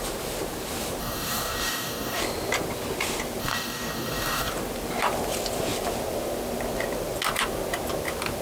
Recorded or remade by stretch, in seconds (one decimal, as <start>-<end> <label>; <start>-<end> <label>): 0.0-1.0 recorded; 1.0-2.2 remade; 2.2-3.4 recorded; 3.4-4.5 remade; 4.5-8.4 recorded

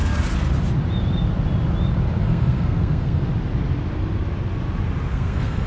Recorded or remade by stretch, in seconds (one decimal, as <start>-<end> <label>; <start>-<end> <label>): 0.0-2.2 recorded; 2.2-3.3 remade; 3.3-5.1 recorded; 5.1-5.7 remade